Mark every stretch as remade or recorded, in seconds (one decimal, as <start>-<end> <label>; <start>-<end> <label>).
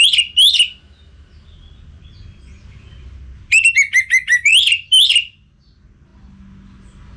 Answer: 0.0-7.2 recorded